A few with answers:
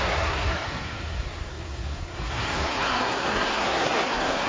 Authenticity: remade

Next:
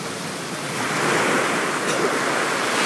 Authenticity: recorded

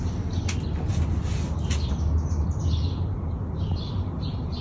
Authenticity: recorded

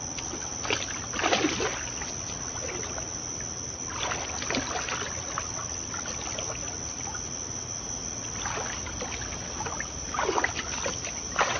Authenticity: recorded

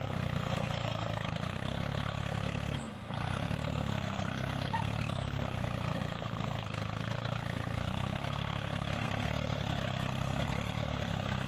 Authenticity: remade